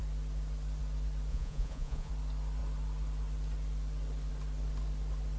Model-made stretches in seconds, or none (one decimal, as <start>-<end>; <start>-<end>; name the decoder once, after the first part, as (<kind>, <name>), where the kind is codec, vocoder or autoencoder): 1.3-2.1 (vocoder, Vocos)